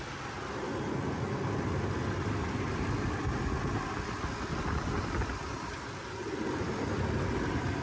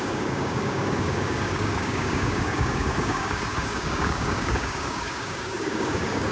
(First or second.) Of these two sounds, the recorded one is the first